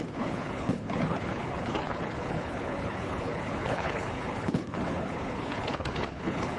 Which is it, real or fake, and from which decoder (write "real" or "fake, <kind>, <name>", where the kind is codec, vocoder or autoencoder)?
fake, codec, HILCodec